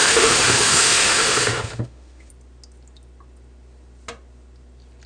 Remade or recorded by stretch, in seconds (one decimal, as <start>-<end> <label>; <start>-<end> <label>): 0.0-2.3 remade; 2.3-5.1 recorded